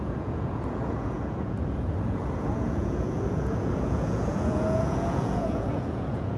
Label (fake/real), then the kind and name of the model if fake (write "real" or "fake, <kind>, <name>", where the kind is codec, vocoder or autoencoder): fake, vocoder, Vocos